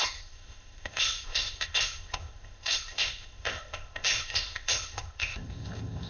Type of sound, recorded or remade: remade